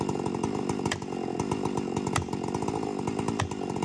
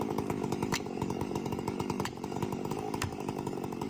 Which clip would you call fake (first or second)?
second